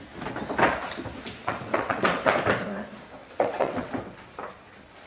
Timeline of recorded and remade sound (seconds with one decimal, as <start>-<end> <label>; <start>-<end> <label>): 0.0-1.4 recorded; 1.4-2.3 remade; 2.3-3.2 recorded; 3.2-3.9 remade; 3.9-5.1 recorded